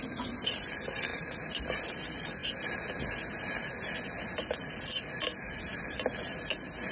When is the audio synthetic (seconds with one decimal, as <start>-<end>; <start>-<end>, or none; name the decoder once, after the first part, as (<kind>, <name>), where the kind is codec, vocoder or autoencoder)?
none